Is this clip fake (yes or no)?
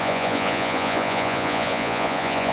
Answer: yes